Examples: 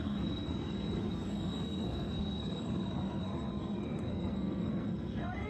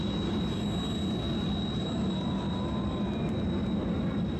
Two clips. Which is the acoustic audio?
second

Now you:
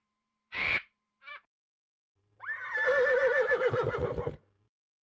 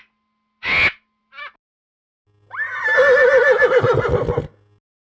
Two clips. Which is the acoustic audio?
second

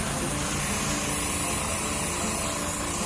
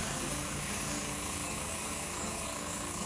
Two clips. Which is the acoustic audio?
first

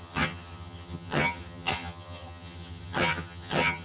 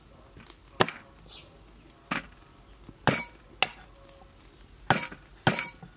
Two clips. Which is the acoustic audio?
second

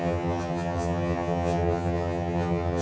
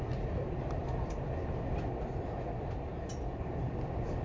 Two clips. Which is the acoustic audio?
second